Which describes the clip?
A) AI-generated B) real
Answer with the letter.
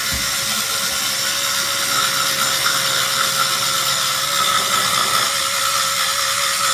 B